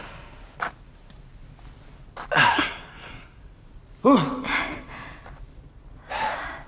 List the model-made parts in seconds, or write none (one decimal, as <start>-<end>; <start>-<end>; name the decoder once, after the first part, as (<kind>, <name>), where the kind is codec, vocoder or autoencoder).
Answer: 2.5-3.4 (codec, SNAC)